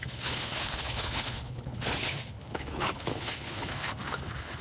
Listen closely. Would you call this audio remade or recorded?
remade